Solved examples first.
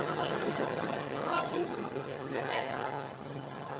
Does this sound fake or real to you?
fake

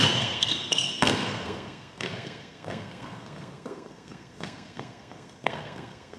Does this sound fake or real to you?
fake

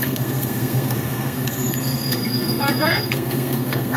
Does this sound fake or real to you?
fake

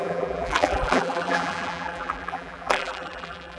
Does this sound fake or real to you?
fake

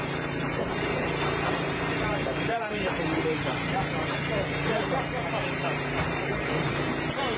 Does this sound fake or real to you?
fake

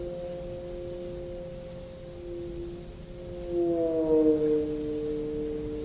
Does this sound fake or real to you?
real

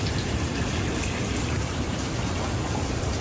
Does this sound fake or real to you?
fake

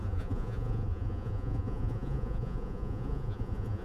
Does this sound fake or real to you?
fake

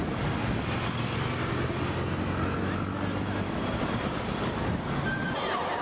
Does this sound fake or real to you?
real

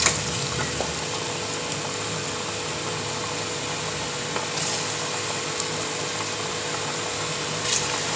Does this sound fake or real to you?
real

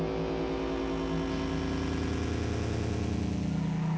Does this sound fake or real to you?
real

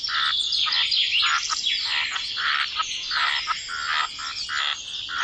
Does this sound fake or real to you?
real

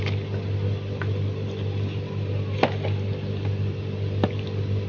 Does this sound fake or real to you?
real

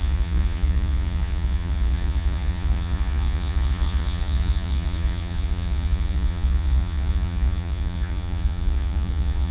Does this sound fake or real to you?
fake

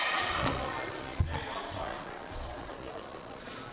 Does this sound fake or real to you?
fake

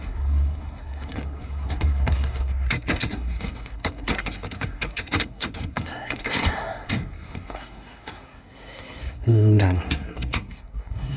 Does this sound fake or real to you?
fake